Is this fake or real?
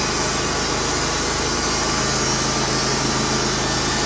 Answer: real